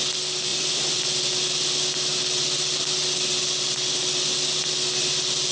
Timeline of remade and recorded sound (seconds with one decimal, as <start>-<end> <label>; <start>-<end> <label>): 0.0-0.5 recorded; 0.5-1.0 remade; 1.0-5.5 recorded